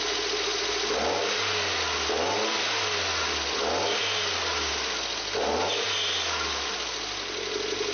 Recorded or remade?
recorded